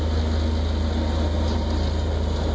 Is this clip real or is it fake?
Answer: real